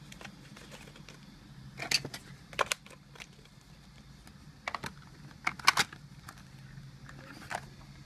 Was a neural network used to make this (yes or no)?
no